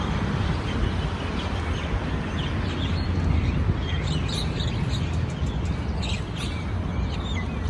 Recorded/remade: recorded